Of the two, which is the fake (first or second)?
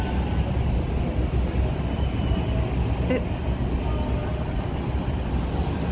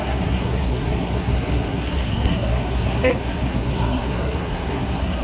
second